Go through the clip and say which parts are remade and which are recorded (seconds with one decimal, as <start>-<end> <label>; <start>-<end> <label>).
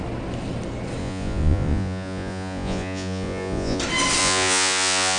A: 0.0-1.0 recorded; 1.0-3.8 remade; 3.8-4.2 recorded; 4.2-5.2 remade